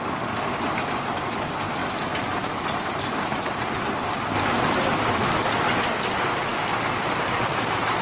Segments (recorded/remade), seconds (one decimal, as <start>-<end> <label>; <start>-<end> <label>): 0.0-8.0 recorded